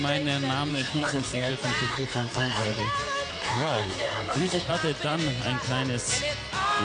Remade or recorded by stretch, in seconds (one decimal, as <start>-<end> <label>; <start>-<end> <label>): 0.0-0.7 recorded; 0.7-1.5 remade; 1.5-1.9 recorded; 1.9-2.8 remade; 2.8-3.3 recorded; 3.3-4.7 remade; 4.7-6.8 recorded